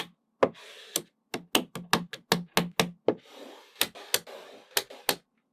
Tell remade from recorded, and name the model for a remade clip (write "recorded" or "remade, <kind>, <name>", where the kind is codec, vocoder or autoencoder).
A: recorded